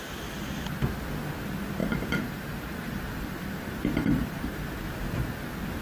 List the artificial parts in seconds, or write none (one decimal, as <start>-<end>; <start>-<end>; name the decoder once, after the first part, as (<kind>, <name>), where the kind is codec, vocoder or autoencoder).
1.8-5.3 (vocoder, BigVGAN v2)